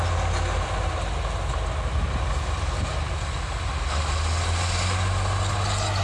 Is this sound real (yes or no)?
yes